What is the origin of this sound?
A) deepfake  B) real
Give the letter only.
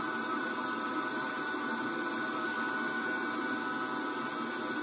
B